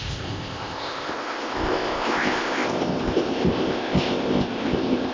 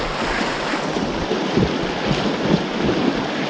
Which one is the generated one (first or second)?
first